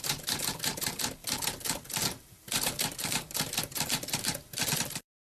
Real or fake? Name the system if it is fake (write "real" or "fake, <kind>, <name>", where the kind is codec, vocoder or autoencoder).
fake, vocoder, BigVGAN v2